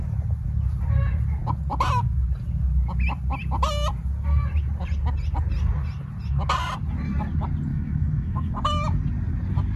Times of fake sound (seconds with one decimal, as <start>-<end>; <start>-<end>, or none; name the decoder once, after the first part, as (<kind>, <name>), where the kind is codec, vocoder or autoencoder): 7.7-8.5 (autoencoder, DAC-VAE)